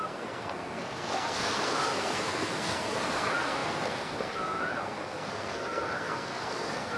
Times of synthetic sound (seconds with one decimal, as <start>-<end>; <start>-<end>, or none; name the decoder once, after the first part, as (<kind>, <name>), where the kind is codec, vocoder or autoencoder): 0.0-7.0 (codec, SNAC)